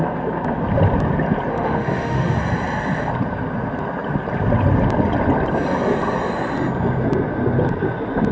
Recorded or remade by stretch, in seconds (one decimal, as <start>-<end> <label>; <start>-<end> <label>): 0.0-1.5 recorded; 1.5-2.4 remade; 2.4-8.3 recorded